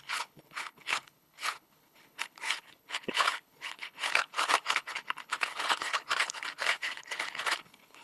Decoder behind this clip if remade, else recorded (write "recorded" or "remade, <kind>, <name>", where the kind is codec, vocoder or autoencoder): remade, codec, HILCodec